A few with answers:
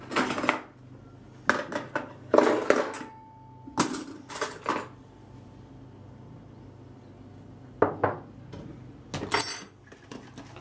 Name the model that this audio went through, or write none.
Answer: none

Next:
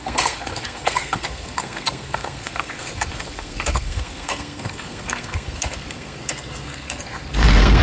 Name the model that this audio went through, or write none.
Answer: codec, SNAC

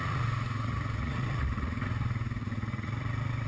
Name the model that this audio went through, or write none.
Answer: vocoder, Vocos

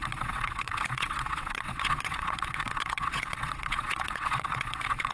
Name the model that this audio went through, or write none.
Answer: vocoder, WaveNeXt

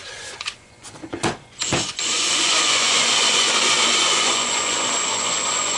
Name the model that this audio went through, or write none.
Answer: vocoder, Vocos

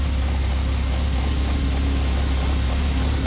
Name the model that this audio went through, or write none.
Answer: none